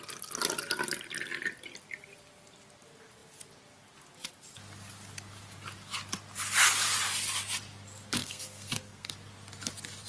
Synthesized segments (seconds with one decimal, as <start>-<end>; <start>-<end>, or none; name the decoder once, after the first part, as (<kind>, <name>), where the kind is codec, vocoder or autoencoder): 8.2-9.1 (codec, SNAC)